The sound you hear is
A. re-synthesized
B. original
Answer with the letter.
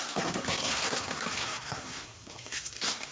A